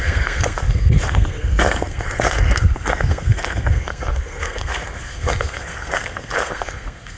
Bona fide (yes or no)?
no